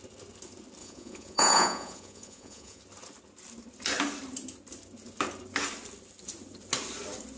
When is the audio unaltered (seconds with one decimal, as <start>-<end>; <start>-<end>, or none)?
0.0-0.8; 2.8-7.4